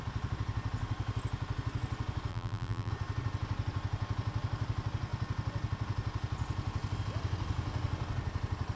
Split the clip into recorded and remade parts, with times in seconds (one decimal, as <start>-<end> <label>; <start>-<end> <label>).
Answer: 0.0-2.3 recorded; 2.3-2.9 remade; 2.9-8.8 recorded